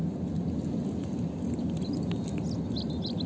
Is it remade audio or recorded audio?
recorded